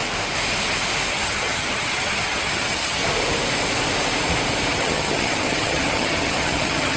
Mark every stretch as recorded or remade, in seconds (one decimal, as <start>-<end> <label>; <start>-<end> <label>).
0.0-1.1 recorded; 1.1-3.0 remade; 3.0-4.7 recorded; 4.7-7.0 remade